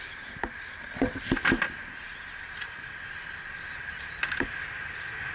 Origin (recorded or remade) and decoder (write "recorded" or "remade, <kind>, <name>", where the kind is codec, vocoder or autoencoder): recorded